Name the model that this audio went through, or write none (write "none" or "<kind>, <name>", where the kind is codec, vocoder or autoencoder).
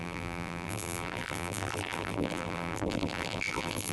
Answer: vocoder, BigVGAN v2